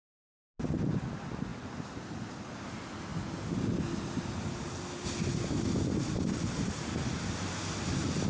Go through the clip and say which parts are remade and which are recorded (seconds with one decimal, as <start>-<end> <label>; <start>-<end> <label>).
0.0-8.3 recorded